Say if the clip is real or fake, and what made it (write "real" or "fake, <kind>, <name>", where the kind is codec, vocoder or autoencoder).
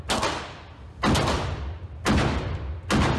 real